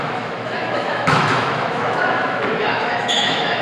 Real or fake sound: fake